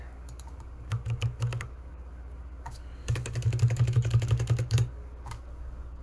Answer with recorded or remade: remade